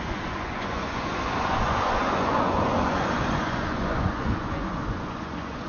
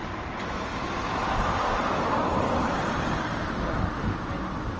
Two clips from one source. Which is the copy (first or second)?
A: first